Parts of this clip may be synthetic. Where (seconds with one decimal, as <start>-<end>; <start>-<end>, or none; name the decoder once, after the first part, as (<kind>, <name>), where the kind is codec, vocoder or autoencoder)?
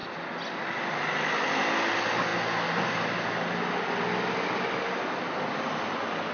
none